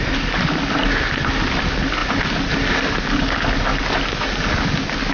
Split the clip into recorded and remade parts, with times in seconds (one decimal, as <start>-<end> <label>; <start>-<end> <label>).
0.0-5.1 recorded

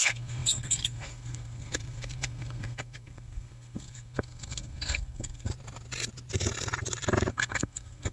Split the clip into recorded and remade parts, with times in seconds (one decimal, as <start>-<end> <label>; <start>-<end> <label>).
0.0-5.5 remade; 5.5-7.3 recorded; 7.3-8.1 remade

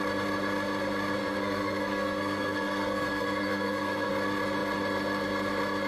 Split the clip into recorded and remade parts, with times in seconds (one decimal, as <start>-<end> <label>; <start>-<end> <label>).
0.0-1.2 recorded; 1.2-4.1 remade; 4.1-5.9 recorded

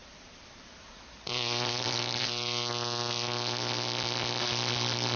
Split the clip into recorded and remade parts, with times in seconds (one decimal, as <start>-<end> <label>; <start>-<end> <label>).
0.0-2.2 remade; 2.2-5.2 recorded

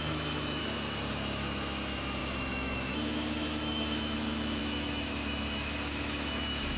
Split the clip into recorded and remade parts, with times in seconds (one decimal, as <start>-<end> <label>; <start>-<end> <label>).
0.0-0.6 remade; 0.6-1.1 recorded; 1.1-6.8 remade

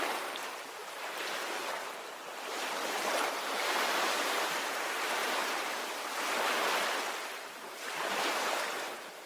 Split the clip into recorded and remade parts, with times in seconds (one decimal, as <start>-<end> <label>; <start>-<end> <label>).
0.0-0.8 recorded; 0.8-4.6 remade; 4.6-9.3 recorded